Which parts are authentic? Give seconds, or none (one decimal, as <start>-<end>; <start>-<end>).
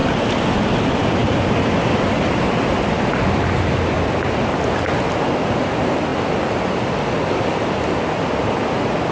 0.0-9.1